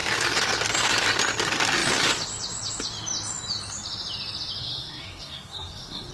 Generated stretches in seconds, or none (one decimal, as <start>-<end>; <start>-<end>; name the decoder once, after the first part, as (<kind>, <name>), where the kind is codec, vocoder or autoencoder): 4.6-6.1 (codec, SNAC)